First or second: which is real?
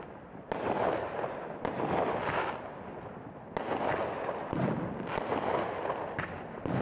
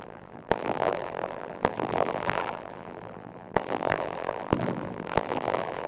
first